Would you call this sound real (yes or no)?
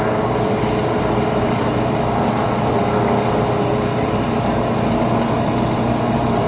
yes